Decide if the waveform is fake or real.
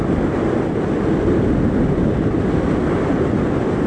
real